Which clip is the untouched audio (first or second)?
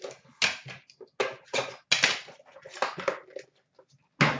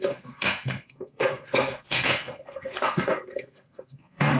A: first